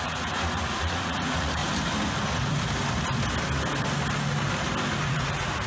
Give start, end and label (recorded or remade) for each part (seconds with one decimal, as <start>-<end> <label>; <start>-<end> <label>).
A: 0.0-1.6 remade; 1.6-5.0 recorded; 5.0-5.7 remade